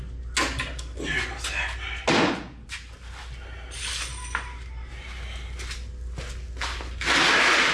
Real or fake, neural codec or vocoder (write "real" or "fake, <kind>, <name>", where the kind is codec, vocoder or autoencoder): real